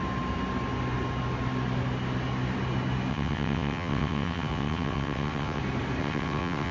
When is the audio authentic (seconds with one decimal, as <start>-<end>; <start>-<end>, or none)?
0.0-3.1; 5.6-6.0